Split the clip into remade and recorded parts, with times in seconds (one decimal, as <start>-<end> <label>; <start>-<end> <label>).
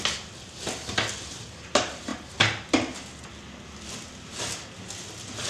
0.0-5.5 recorded